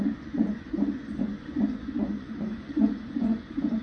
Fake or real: fake